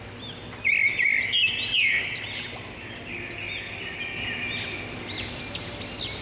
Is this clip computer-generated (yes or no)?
no